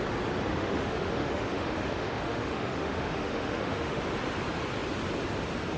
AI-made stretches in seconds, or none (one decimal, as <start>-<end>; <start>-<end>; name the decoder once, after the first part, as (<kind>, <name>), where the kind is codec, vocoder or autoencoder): 0.5-4.0 (autoencoder, DAC-VAE)